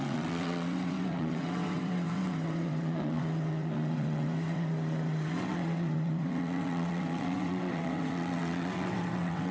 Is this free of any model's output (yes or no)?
no